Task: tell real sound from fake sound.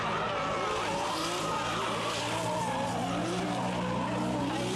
real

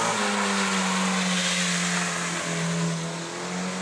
real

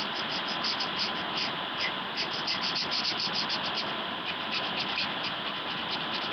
real